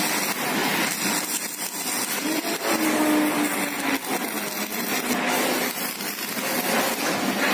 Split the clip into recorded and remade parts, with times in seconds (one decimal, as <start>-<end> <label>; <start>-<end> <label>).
0.0-7.5 recorded